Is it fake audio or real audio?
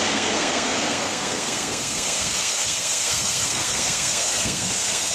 fake